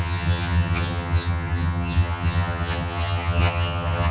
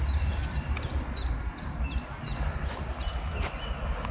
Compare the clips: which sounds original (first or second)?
second